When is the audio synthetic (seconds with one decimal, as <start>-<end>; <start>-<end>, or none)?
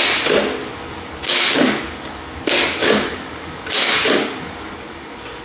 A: 0.6-2.4; 2.8-5.4